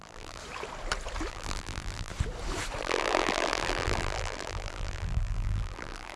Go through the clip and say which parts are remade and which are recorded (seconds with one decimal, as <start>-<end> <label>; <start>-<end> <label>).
0.0-0.4 remade; 0.4-1.3 recorded; 1.3-2.1 remade; 2.1-2.8 recorded; 2.8-6.2 remade